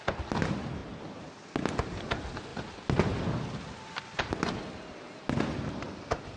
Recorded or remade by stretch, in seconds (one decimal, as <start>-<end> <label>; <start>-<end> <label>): 0.0-6.4 recorded